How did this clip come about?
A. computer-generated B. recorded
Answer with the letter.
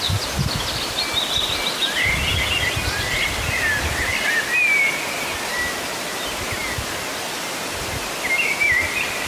B